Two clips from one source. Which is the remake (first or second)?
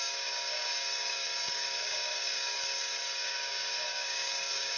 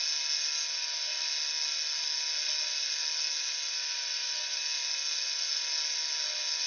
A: first